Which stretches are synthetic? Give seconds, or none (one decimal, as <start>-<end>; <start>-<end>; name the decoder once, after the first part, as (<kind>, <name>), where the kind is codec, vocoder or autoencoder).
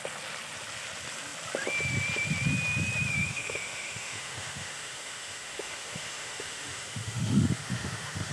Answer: 3.1-8.3 (autoencoder, DAC-VAE)